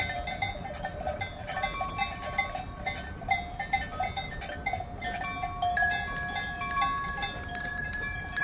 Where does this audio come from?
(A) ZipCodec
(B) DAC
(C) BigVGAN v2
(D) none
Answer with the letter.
D